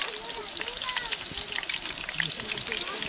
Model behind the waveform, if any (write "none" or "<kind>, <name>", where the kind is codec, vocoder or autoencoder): none